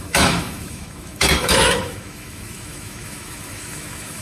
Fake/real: fake